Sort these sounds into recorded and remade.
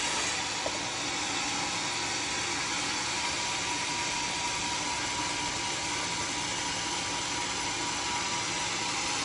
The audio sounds recorded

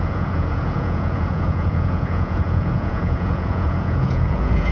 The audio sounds remade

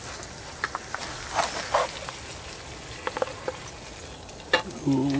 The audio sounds recorded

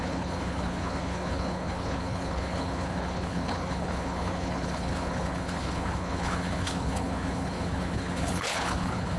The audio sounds remade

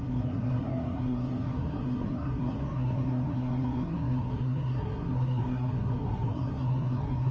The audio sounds remade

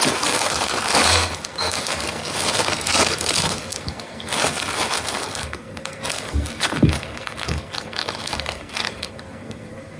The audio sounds remade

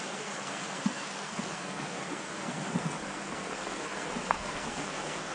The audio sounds remade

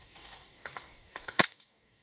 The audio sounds remade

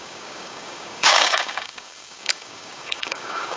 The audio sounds remade